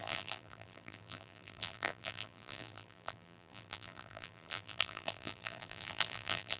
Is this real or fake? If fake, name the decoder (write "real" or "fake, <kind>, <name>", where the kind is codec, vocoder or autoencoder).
fake, vocoder, BigVGAN v2